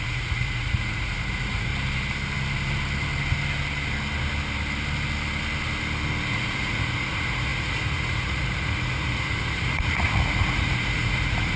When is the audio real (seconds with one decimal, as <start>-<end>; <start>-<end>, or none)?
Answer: 1.7-6.3